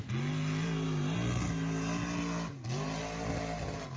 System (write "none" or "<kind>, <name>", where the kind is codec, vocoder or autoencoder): none